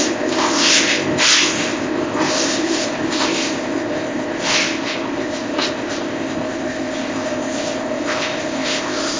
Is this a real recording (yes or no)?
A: no